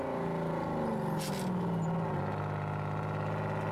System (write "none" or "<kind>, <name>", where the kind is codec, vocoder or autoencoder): none